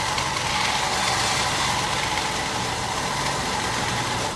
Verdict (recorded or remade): recorded